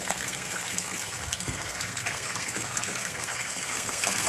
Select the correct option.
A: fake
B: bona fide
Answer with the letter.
A